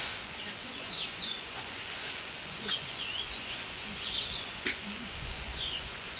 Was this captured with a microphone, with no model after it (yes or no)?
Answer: no